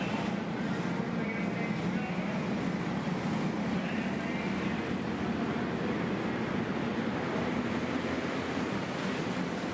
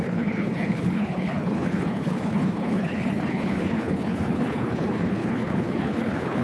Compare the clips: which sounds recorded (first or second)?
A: first